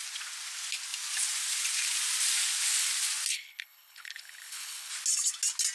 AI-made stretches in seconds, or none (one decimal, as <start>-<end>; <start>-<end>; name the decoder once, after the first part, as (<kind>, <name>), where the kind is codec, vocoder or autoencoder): 3.3-4.9 (codec, HILCodec)